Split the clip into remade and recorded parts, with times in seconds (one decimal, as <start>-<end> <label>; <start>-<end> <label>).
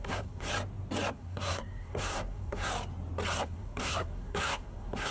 0.0-0.5 remade; 0.5-1.1 recorded; 1.1-2.7 remade; 2.7-3.4 recorded; 3.4-5.1 remade